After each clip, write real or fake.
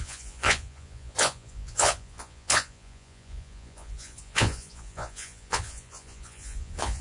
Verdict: fake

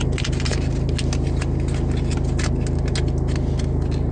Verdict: real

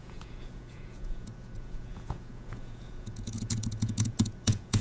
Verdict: fake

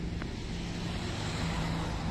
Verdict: real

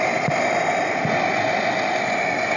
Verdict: real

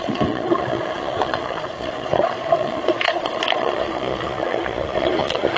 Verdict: fake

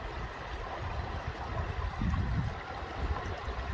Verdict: real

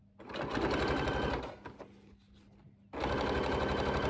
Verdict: real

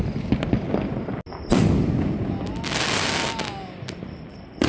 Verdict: real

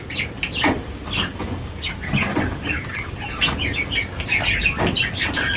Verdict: real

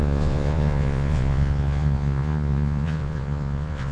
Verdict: fake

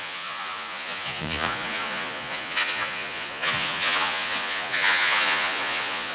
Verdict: fake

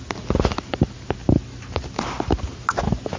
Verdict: real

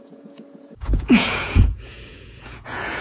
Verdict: fake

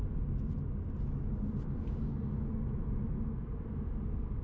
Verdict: real